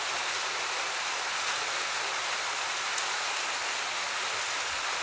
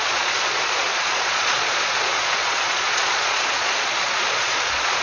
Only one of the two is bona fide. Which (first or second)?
first